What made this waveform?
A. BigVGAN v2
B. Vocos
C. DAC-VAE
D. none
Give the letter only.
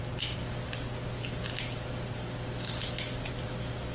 D